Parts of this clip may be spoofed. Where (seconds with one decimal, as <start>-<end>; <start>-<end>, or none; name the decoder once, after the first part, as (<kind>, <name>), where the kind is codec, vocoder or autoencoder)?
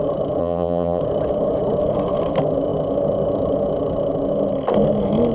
0.4-1.0 (vocoder, BigVGAN v2)